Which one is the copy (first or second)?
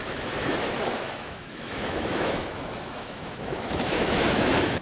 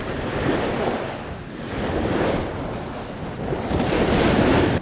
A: first